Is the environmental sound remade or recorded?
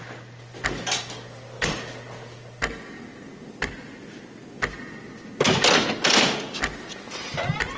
recorded